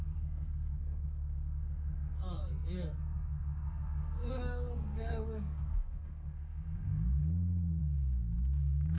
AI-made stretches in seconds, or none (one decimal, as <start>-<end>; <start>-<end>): 0.0-7.2; 7.8-9.0

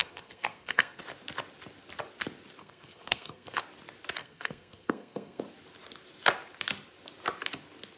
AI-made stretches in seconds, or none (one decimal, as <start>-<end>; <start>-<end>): 0.0-1.0; 2.6-3.6; 4.2-5.4

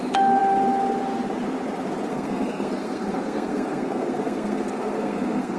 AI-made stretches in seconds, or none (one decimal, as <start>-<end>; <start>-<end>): 2.1-5.6

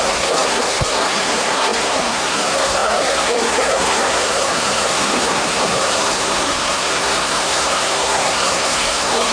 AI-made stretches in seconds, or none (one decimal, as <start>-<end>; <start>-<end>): 0.0-9.3

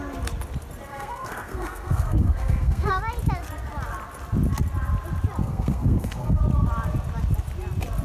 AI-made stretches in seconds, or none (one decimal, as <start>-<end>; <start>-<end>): 0.9-3.0; 5.4-6.4

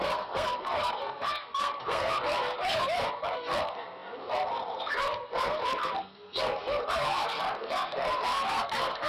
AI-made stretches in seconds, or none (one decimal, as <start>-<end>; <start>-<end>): 0.0-9.1

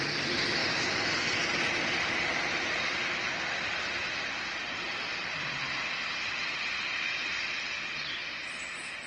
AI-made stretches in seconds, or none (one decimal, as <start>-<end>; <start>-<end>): none

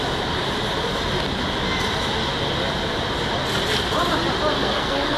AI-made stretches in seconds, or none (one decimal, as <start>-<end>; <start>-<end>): 4.5-5.2